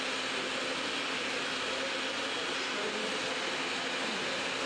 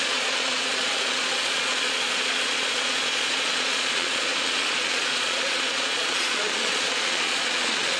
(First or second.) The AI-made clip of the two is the second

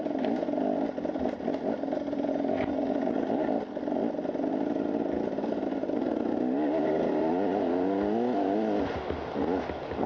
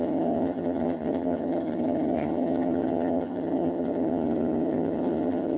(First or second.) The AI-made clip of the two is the second